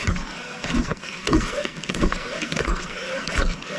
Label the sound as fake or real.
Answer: fake